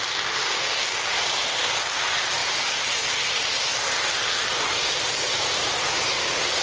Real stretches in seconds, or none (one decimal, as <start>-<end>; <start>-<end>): 0.0-6.6